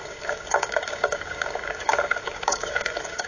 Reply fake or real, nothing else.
fake